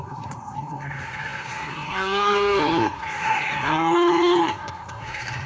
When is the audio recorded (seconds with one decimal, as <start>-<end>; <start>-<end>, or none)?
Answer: none

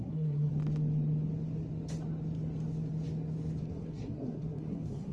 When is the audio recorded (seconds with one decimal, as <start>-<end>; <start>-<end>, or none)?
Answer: 0.5-3.6